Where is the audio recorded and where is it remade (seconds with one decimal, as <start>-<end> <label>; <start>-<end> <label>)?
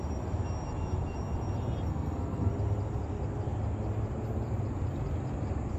0.0-1.9 recorded; 1.9-2.5 remade; 2.5-5.8 recorded